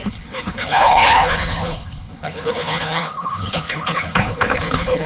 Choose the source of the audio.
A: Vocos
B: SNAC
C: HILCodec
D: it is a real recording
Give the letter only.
C